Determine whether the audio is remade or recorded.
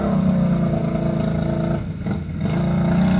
recorded